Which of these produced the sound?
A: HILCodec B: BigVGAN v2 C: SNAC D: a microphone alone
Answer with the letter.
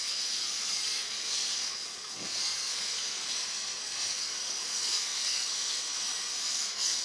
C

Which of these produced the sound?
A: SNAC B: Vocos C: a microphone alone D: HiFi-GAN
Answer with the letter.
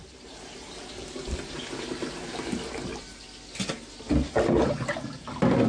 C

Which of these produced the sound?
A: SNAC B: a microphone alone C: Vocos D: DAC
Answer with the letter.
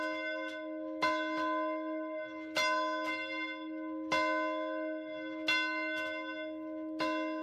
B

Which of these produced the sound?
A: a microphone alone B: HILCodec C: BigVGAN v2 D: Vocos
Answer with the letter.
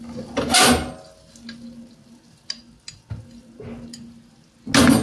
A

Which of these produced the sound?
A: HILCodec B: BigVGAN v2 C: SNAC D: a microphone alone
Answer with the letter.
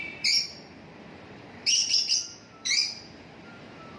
B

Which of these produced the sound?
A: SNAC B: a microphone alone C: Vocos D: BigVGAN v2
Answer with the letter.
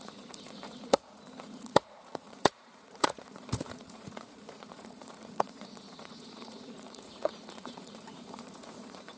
C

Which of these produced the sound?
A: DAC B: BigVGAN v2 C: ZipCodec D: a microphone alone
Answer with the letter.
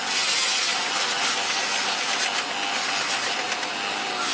D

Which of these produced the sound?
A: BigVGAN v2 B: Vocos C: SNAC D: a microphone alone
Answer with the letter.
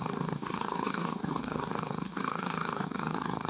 C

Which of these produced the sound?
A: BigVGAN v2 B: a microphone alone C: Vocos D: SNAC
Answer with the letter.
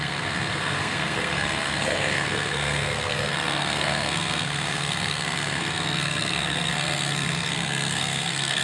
D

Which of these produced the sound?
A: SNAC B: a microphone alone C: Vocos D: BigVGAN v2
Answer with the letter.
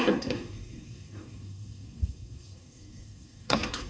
A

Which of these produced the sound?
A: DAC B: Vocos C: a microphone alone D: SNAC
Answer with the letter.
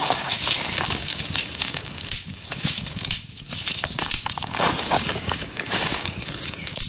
A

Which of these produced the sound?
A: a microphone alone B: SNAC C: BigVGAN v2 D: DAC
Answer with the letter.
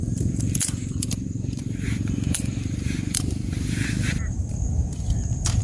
C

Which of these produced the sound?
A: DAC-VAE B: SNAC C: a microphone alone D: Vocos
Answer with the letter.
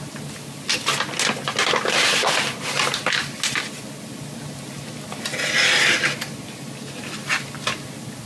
C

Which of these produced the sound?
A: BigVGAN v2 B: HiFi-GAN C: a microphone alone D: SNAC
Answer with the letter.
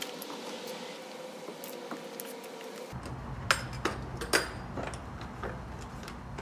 C